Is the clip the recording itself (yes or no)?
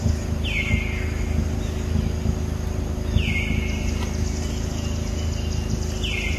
yes